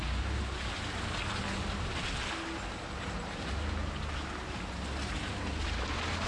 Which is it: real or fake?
real